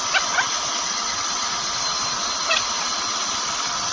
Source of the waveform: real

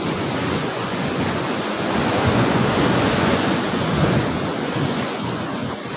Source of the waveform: fake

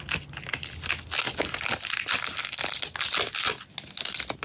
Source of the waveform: real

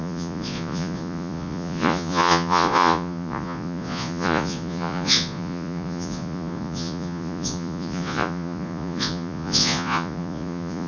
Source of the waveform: fake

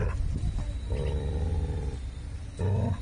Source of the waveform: real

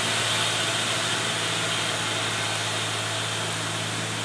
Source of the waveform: real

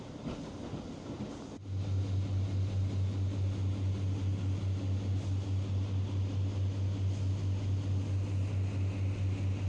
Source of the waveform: real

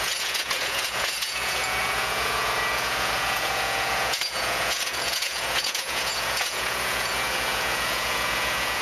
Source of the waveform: fake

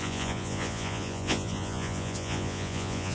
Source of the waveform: fake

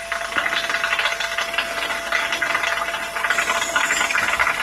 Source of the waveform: real